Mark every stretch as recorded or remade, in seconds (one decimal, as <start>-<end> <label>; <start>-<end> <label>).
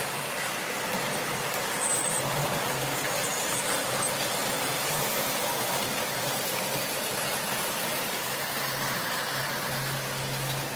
0.0-3.3 recorded; 3.3-4.0 remade; 4.0-4.4 recorded; 4.4-9.5 remade; 9.5-10.8 recorded